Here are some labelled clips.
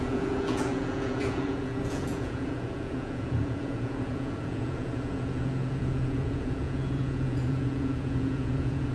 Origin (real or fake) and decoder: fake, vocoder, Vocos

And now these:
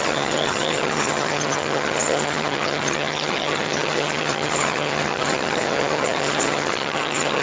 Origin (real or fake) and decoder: fake, vocoder, HiFi-GAN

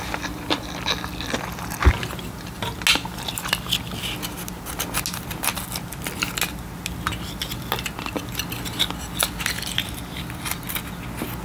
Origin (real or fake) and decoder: real